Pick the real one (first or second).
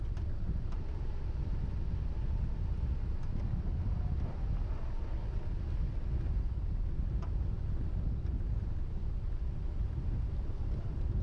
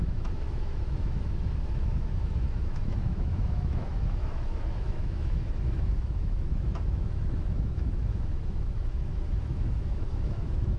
first